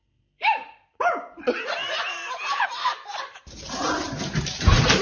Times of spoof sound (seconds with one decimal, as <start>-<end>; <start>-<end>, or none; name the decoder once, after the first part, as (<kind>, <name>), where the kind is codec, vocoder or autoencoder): 0.6-1.3 (vocoder, BigVGAN v2); 1.8-5.0